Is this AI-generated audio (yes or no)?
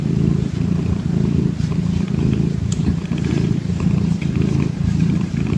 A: yes